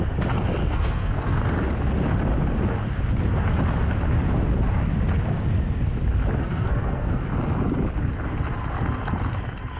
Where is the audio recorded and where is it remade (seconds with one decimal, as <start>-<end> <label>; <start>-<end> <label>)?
0.0-0.6 recorded; 0.6-1.4 remade; 1.4-6.4 recorded; 6.4-7.2 remade; 7.2-9.8 recorded